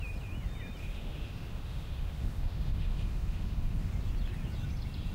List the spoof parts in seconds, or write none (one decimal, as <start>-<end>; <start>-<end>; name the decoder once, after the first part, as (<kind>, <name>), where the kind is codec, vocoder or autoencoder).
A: 0.8-3.9 (autoencoder, DAC-VAE)